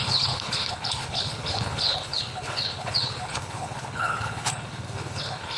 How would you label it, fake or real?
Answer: fake